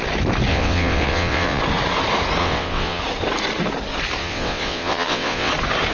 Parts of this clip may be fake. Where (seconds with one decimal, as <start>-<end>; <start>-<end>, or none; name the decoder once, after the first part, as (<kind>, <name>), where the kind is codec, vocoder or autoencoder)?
0.5-1.6 (vocoder, WaveNeXt); 2.4-3.0; 4.2-5.5